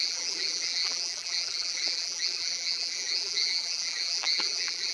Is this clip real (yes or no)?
no